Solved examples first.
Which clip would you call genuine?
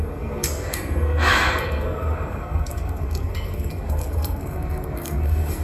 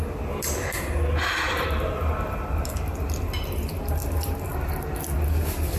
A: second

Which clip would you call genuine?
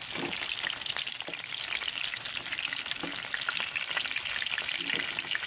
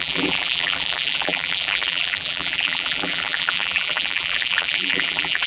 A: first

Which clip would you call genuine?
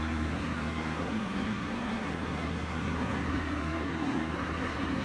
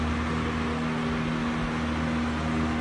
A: second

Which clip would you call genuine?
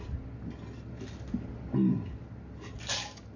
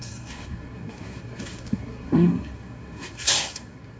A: first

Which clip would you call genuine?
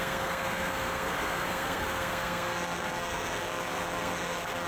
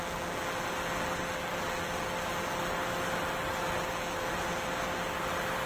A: second